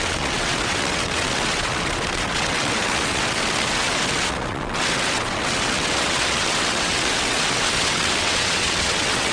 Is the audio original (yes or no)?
no